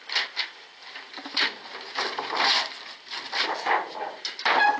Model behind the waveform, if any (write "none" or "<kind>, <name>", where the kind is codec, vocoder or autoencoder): none